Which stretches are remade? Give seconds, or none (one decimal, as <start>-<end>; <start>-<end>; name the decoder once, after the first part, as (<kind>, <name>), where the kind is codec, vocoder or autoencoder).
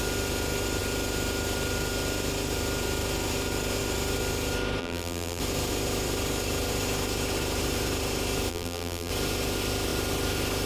4.8-5.4 (vocoder, BigVGAN v2); 8.5-9.1